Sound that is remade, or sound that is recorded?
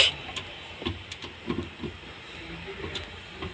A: recorded